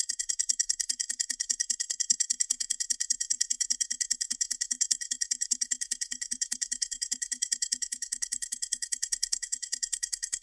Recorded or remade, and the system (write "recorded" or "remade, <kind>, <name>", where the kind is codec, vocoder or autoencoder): remade, codec, SNAC